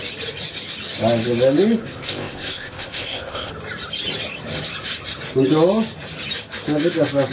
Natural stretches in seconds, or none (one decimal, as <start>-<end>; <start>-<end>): 0.0-1.8; 3.5-7.3